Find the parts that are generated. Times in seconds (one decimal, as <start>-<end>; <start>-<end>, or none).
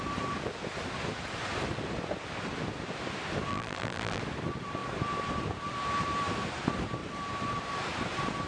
3.5-4.2